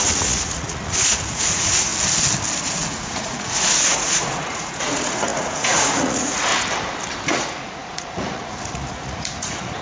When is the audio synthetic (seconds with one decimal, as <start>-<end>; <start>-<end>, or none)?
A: 0.0-1.9; 2.6-6.5; 7.3-9.8